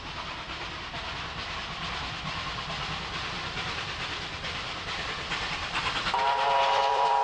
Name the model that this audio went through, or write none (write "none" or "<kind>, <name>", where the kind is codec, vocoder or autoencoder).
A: vocoder, BigVGAN v2